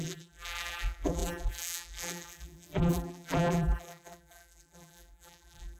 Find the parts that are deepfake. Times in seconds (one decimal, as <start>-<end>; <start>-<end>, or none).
0.0-5.8